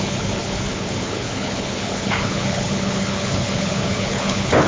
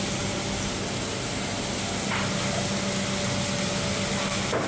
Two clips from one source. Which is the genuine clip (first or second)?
second